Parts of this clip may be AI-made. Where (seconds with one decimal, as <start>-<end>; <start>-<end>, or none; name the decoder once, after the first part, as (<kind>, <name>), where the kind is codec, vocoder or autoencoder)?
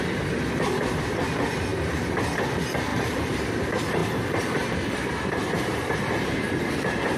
2.9-3.5 (vocoder, BigVGAN v2); 4.0-6.7